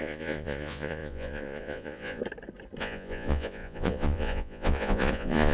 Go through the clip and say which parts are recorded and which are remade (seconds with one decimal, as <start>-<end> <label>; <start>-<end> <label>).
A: 0.0-2.2 remade; 2.2-2.8 recorded; 2.8-5.5 remade